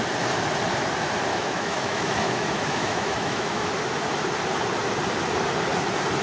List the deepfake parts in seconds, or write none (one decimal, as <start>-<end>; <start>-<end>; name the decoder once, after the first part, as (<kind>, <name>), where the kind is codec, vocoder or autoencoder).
1.3-3.7 (autoencoder, DAC-VAE)